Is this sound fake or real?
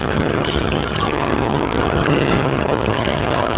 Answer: fake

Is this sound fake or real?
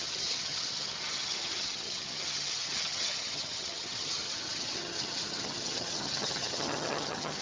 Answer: fake